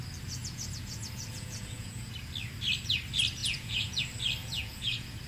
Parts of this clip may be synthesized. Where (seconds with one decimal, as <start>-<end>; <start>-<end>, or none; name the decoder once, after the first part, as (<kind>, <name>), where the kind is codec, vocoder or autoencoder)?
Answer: 0.4-2.1 (vocoder, Vocos); 3.4-4.0; 4.4-5.3